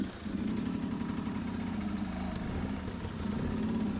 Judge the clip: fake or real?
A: real